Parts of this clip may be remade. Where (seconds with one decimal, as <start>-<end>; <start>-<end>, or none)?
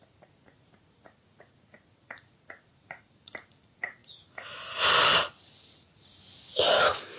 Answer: 0.0-4.0; 5.6-6.2